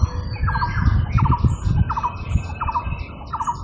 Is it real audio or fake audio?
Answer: real